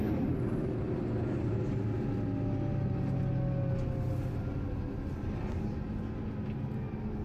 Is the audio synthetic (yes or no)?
no